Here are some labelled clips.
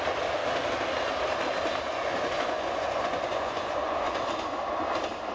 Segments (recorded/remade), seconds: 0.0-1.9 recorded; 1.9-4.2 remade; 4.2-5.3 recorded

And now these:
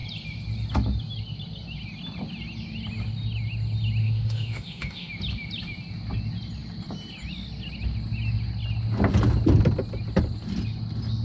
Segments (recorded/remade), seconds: 0.0-4.0 recorded; 4.0-5.1 remade; 5.1-11.2 recorded

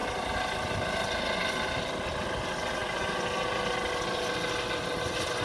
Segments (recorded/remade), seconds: 0.0-5.4 recorded